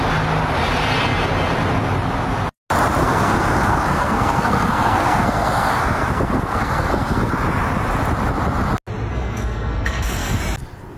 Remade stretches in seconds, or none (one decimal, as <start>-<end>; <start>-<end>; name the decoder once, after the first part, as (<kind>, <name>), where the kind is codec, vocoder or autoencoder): 3.0-7.3 (codec, SNAC); 9.1-10.4